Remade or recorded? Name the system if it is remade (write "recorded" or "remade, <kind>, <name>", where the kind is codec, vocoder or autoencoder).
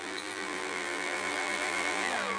remade, vocoder, BigVGAN v2